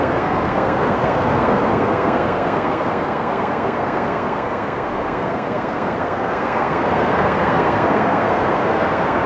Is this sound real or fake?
fake